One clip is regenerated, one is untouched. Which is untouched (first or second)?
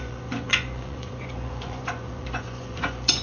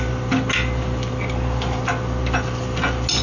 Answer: second